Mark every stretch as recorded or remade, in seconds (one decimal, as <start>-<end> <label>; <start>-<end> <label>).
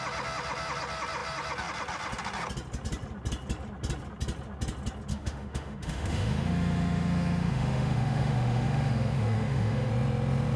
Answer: 0.0-5.1 recorded; 5.1-9.9 remade; 9.9-10.6 recorded